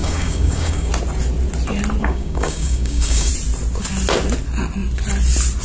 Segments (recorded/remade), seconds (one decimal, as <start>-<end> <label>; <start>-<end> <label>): 0.0-0.9 remade; 0.9-2.0 recorded; 2.0-3.3 remade; 3.3-5.6 recorded